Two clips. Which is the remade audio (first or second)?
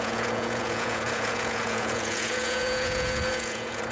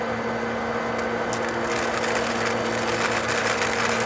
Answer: first